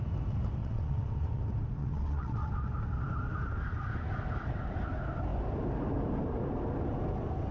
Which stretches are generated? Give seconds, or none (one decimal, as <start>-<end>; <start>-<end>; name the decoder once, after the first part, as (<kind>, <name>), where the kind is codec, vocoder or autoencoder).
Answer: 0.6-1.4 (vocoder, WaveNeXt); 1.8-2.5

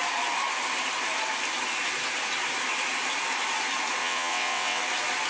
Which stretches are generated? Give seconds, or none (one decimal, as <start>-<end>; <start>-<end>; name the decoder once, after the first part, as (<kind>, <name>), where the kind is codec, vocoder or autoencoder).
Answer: 4.0-4.8 (vocoder, WaveNeXt)

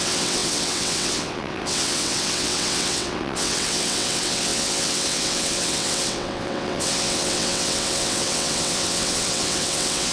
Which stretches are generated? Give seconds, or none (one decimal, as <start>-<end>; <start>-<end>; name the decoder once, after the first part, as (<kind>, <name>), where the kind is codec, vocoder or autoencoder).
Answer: 0.0-10.1 (vocoder, WaveNeXt)